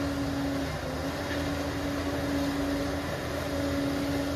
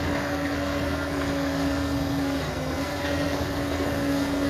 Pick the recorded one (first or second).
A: first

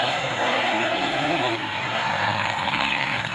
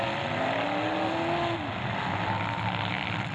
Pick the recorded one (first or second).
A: second